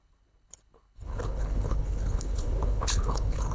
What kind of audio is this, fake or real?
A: fake